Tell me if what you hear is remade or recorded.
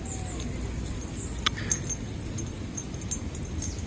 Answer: recorded